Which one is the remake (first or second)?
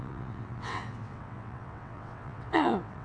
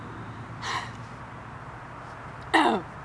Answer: first